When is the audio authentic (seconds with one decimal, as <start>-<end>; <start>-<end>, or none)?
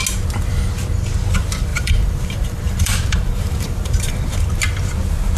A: 0.0-1.7; 4.2-5.4